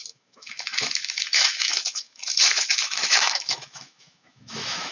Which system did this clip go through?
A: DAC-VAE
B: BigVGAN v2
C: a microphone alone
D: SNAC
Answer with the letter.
A